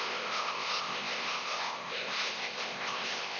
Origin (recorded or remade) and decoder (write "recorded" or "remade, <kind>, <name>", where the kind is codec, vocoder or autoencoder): remade, codec, ZipCodec